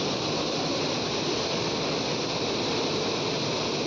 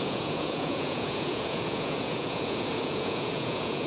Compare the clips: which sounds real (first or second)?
first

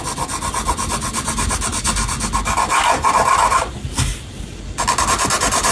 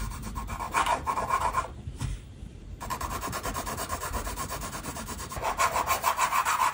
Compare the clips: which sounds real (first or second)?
first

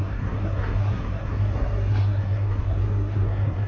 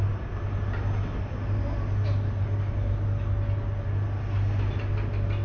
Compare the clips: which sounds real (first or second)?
second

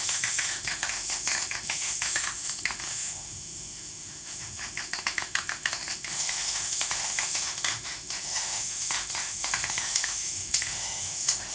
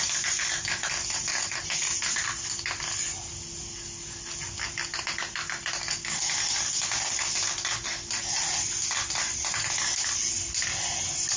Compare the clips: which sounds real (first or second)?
second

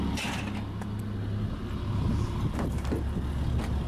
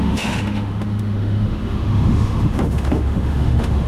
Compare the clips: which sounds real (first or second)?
first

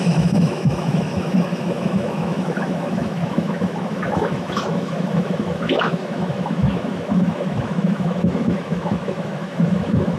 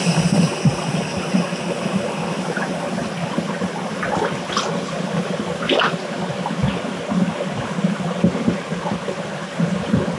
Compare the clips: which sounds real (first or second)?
second